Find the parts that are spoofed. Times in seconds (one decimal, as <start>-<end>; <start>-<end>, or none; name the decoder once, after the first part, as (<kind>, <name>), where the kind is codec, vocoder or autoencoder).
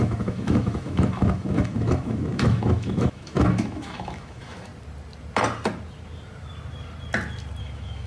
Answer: 0.0-4.7 (autoencoder, DAC-VAE); 7.6-8.1